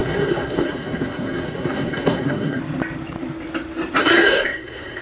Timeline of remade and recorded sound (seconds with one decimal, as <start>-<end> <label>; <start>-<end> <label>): 0.0-2.6 remade; 2.6-4.0 recorded; 4.0-5.0 remade